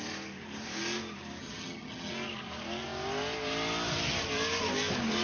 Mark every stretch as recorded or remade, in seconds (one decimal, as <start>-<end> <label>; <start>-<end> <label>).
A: 0.0-1.4 recorded; 1.4-2.1 remade; 2.1-5.2 recorded